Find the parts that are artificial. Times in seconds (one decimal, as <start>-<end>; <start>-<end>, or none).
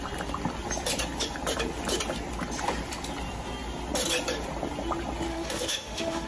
5.3-6.3